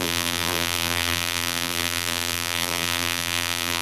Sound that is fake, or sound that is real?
fake